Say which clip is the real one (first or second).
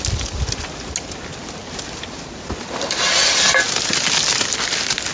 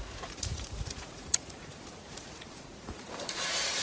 first